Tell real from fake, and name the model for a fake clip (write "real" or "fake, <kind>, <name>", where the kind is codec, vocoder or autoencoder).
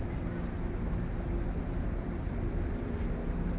real